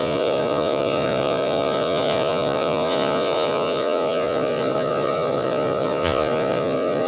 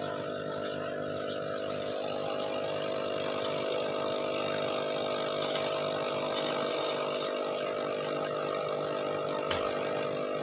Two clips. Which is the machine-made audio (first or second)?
first